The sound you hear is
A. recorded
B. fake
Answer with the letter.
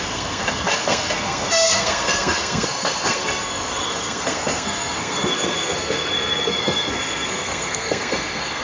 B